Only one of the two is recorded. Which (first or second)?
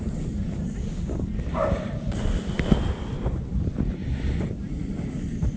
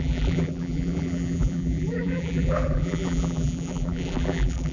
first